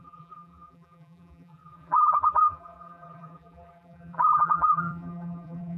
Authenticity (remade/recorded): remade